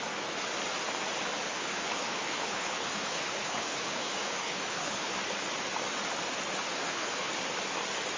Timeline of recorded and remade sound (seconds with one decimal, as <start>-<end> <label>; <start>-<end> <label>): 0.0-1.5 recorded; 1.5-5.1 remade; 5.1-6.8 recorded; 6.8-7.3 remade; 7.3-8.2 recorded